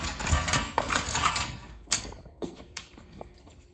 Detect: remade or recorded remade